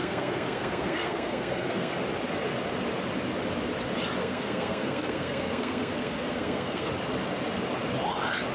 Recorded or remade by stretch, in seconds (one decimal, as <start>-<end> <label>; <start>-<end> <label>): 0.0-1.9 remade; 1.9-4.2 recorded; 4.2-6.9 remade; 6.9-8.5 recorded